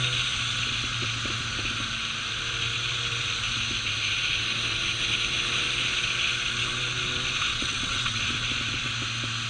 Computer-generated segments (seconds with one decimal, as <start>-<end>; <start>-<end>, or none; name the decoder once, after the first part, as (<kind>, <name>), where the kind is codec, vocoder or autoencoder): 7.5-8.2 (vocoder, WaveNeXt)